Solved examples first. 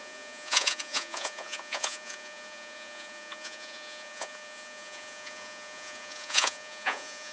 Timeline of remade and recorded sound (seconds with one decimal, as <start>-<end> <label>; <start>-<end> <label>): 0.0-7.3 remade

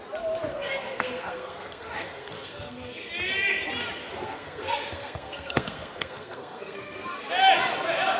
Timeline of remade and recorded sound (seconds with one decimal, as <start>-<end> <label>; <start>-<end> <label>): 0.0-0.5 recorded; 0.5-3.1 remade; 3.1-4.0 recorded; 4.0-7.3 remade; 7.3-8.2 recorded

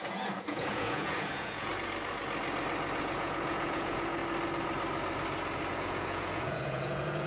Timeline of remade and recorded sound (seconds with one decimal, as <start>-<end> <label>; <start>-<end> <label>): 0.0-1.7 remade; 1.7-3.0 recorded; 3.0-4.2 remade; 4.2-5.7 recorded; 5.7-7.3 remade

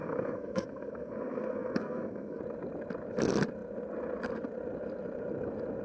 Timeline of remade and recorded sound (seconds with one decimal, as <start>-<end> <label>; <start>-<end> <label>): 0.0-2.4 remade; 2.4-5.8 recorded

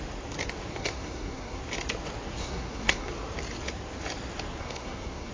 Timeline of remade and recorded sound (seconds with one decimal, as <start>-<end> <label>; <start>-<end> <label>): 0.0-0.7 recorded; 0.7-1.6 remade; 1.6-2.4 recorded; 2.4-3.1 remade; 3.1-4.6 recorded; 4.6-5.3 remade

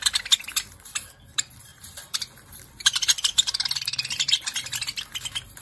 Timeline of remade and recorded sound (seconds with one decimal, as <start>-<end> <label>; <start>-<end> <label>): 0.0-1.7 recorded; 1.7-5.1 remade; 5.1-5.6 recorded

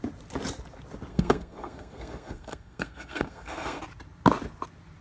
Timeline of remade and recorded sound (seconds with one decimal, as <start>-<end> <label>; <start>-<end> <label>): 0.0-1.1 recorded; 1.1-3.8 remade; 3.8-5.0 recorded

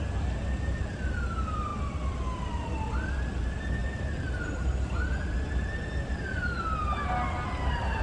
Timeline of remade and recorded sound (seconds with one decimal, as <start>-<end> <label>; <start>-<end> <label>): 0.0-3.8 recorded; 3.8-5.3 remade; 5.3-8.0 recorded